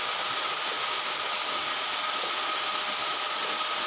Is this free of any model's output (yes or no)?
yes